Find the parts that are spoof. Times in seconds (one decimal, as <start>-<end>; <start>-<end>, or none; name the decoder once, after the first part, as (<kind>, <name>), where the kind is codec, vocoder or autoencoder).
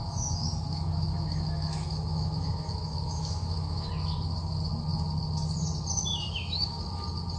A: 0.0-3.9 (autoencoder, DAC-VAE); 6.1-6.8